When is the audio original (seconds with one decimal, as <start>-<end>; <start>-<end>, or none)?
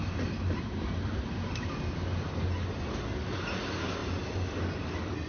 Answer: 0.0-5.3